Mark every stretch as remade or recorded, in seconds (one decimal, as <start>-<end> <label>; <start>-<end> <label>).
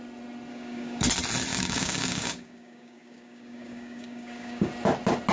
0.0-0.5 recorded; 0.5-1.0 remade; 1.0-1.5 recorded; 1.5-4.7 remade; 4.7-5.3 recorded